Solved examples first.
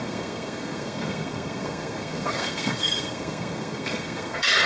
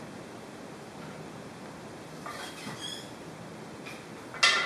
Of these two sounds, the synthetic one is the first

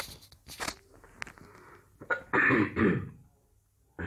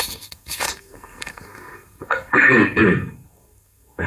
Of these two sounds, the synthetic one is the second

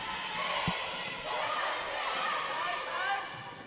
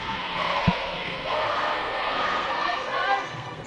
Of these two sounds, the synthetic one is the second